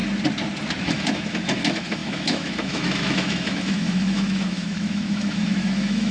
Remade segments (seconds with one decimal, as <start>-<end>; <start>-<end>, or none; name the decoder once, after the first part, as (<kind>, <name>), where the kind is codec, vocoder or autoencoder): 0.8-6.1 (autoencoder, DAC-VAE)